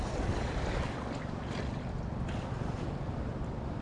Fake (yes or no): no